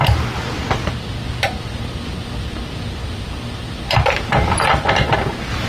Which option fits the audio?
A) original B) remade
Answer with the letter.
A